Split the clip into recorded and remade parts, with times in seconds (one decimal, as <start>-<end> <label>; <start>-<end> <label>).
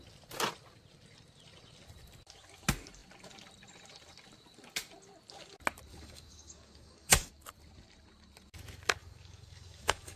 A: 0.0-5.9 recorded; 5.9-7.3 remade; 7.3-9.0 recorded; 9.0-10.2 remade